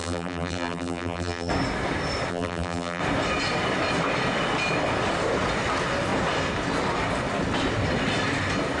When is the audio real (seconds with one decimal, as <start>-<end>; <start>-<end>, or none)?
1.5-2.3; 3.0-8.8